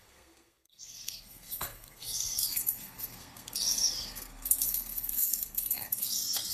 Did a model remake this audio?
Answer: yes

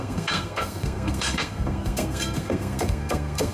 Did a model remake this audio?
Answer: yes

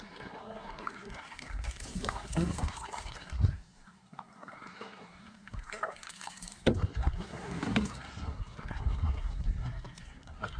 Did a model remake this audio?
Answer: yes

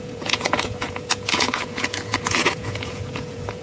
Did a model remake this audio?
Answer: yes